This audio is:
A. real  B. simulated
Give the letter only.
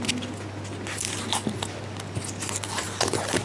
A